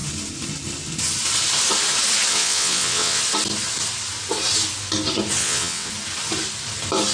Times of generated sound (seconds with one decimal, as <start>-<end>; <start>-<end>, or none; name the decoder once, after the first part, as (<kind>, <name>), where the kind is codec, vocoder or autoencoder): 2.3-3.2 (vocoder, WaveNeXt); 5.4-5.9